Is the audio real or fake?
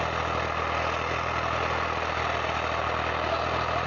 real